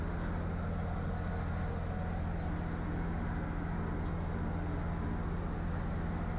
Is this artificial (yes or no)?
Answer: no